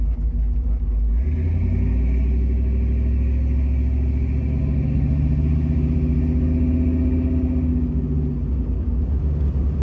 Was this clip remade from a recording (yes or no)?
no